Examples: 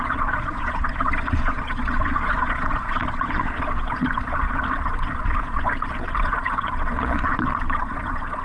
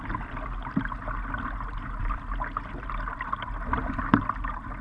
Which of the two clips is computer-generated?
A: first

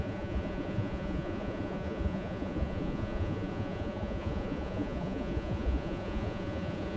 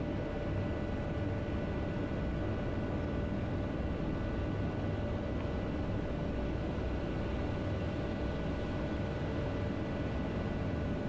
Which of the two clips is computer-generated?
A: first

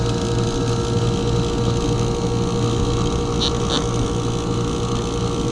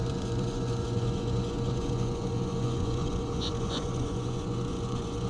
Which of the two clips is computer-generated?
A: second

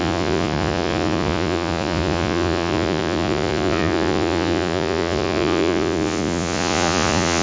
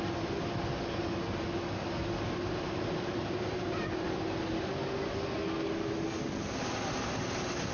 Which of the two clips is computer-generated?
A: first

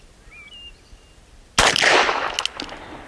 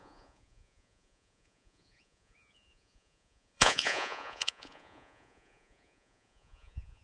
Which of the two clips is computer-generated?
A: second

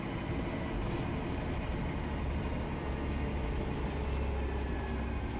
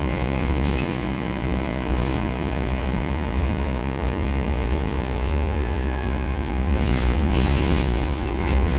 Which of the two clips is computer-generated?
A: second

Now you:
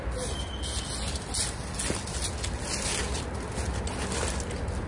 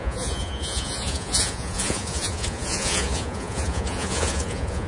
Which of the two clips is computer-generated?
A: second